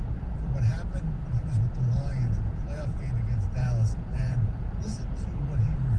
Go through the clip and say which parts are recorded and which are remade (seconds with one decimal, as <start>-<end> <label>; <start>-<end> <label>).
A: 0.0-1.4 recorded; 1.4-5.0 remade; 5.0-6.0 recorded